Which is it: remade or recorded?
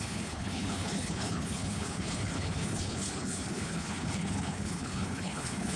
remade